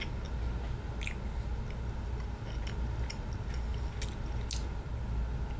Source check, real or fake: real